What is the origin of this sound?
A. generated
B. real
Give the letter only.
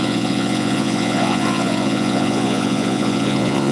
A